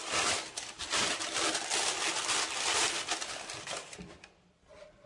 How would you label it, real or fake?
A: fake